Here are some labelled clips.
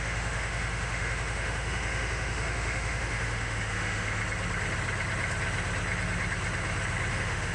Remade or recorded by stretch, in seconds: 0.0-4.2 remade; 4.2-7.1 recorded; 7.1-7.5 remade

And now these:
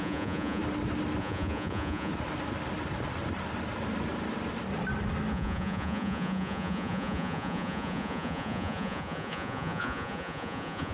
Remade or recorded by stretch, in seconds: 0.0-0.6 remade; 0.6-1.2 recorded; 1.2-2.1 remade; 2.1-5.3 recorded; 5.3-10.9 remade

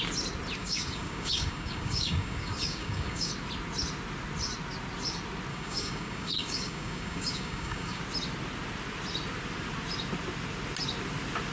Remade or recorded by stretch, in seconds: 0.0-0.6 recorded; 0.6-3.3 remade; 3.3-5.5 recorded; 5.5-8.0 remade; 8.0-11.5 recorded

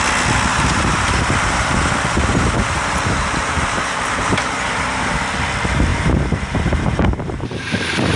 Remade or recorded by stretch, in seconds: 0.0-0.5 recorded; 0.5-5.2 remade; 5.2-5.9 recorded; 5.9-8.2 remade

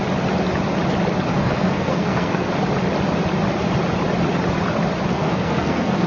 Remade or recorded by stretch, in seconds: 0.0-1.3 recorded; 1.3-2.5 remade; 2.5-5.1 recorded; 5.1-6.1 remade

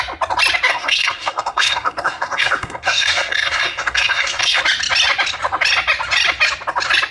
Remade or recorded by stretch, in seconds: 0.0-0.7 recorded; 0.7-4.6 remade; 4.6-7.1 recorded